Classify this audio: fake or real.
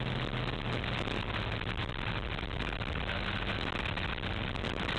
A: real